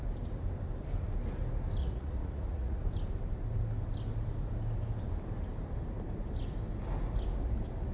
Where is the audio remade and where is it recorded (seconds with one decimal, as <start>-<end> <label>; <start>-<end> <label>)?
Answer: 0.0-1.8 recorded; 1.8-2.8 remade; 2.8-7.9 recorded